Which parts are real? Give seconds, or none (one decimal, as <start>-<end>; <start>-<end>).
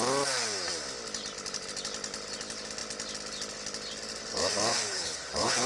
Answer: 0.0-4.7